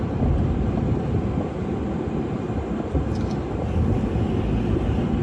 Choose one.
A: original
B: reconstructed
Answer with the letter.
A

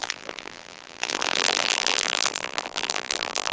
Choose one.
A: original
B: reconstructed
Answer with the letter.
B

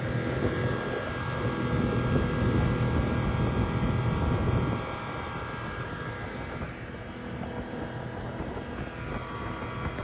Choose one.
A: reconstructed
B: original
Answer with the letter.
B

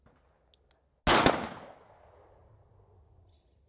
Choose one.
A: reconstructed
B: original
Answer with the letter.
B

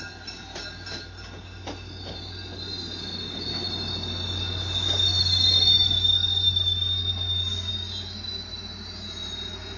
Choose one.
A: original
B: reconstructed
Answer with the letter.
A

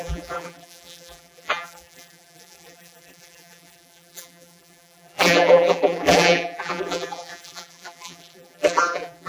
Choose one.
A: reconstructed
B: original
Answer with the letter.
A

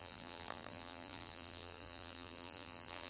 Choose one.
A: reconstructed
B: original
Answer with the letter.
A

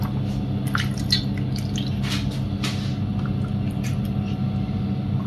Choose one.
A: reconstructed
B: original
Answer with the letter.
B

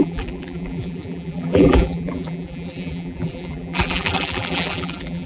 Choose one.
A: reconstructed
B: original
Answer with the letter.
A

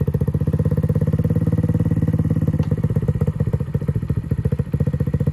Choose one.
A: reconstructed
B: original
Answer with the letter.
B